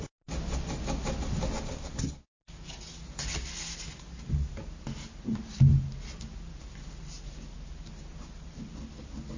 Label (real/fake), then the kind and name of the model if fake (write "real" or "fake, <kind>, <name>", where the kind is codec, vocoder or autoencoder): real